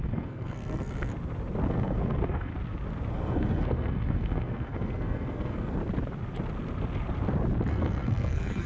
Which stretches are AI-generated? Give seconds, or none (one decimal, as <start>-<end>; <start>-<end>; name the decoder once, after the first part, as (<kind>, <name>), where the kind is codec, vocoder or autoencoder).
0.0-1.1 (codec, SNAC); 1.7-2.5; 3.1-5.8; 7.7-8.7